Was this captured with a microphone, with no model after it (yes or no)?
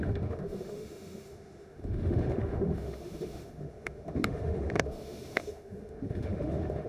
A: no